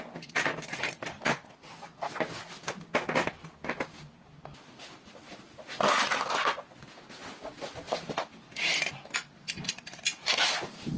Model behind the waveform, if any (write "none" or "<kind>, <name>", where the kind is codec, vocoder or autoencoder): none